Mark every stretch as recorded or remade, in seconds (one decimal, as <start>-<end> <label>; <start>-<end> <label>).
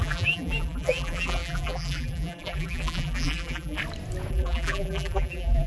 0.0-3.8 remade; 3.8-4.3 recorded; 4.3-5.7 remade